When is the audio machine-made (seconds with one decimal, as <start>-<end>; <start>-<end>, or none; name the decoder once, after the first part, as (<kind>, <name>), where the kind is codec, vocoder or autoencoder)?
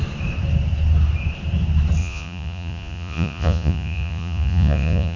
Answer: 2.0-5.2 (vocoder, Vocos)